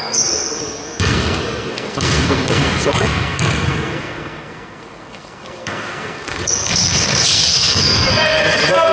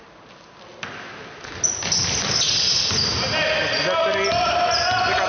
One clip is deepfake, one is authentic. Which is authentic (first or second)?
second